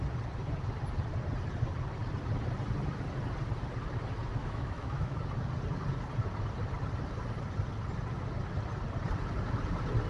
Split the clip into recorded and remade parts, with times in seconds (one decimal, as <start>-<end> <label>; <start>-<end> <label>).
0.0-4.4 recorded; 4.4-5.2 remade; 5.2-10.1 recorded